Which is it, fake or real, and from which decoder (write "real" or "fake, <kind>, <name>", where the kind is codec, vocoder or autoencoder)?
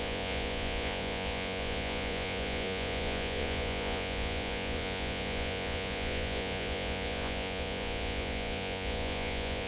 fake, vocoder, Vocos